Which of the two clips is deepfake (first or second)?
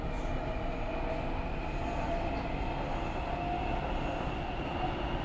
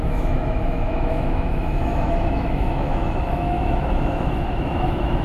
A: second